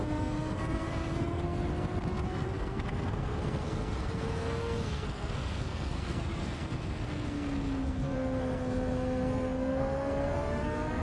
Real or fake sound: fake